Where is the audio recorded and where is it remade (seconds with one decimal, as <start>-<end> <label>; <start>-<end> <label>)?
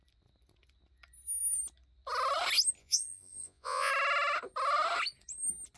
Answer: 0.0-2.8 recorded; 2.8-3.9 remade; 3.9-5.8 recorded